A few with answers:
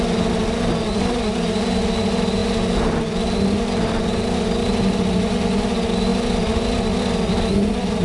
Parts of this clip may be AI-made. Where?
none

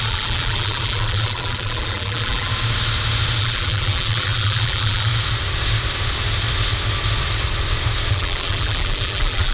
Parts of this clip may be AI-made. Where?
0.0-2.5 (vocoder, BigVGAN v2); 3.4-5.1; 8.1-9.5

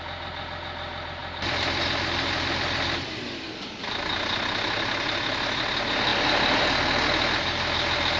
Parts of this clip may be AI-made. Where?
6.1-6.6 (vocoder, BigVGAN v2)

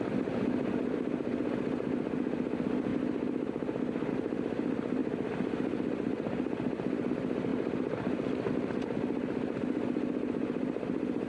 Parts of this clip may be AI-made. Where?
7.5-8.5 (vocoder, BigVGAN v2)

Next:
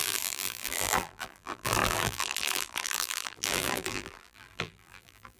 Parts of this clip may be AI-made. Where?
0.0-5.4 (vocoder, BigVGAN v2)